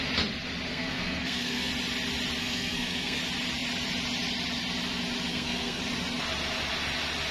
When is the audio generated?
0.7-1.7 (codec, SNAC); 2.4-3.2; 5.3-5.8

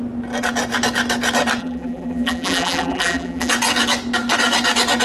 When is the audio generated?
1.6-3.5 (vocoder, BigVGAN v2)

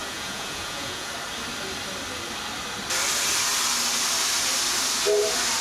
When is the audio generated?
0.0-1.1 (vocoder, Vocos)

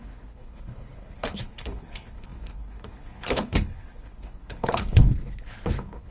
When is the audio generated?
0.0-6.1 (codec, HILCodec)

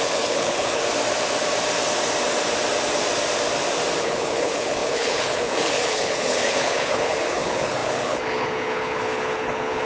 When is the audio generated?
0.0-0.8 (codec, HILCodec); 4.0-9.9

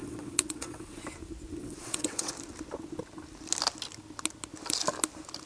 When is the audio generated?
0.0-1.0 (vocoder, WaveNeXt); 1.6-2.3

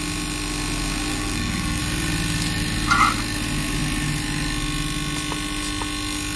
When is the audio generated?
1.1-1.8 (codec, SNAC)